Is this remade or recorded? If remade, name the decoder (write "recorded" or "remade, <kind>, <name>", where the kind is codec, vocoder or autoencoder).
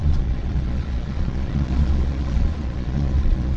remade, vocoder, Vocos